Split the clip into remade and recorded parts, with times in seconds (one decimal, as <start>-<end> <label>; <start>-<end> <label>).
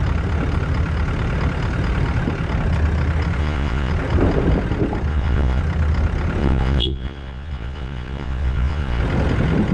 0.0-3.4 recorded; 3.4-3.9 remade; 3.9-5.1 recorded; 5.1-5.6 remade; 5.6-6.4 recorded; 6.4-9.0 remade; 9.0-9.7 recorded